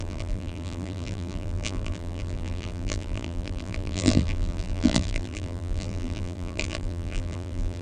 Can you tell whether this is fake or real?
fake